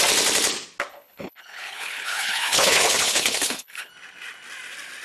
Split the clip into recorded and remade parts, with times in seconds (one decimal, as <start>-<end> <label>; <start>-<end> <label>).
0.0-0.9 recorded; 0.9-3.9 remade; 3.9-5.0 recorded